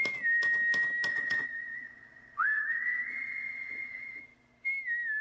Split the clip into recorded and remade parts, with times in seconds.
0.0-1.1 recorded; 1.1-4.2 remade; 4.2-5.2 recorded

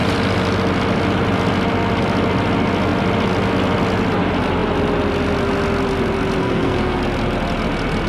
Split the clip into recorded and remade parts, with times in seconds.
0.0-6.4 recorded; 6.4-7.0 remade; 7.0-8.1 recorded